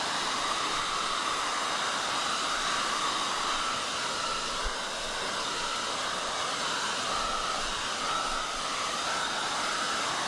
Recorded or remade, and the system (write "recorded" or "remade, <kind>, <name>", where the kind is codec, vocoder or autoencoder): recorded